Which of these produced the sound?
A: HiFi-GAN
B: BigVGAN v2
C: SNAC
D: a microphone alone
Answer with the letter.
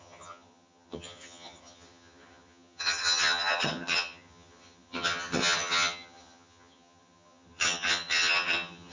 A